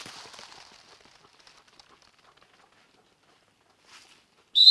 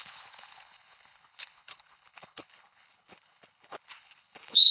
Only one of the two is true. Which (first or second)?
first